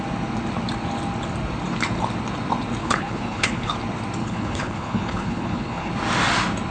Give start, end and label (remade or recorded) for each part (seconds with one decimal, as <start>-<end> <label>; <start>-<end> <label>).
0.0-2.8 recorded; 2.8-3.7 remade; 3.7-4.2 recorded; 4.2-5.9 remade; 5.9-6.7 recorded